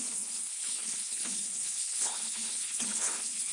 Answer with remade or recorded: remade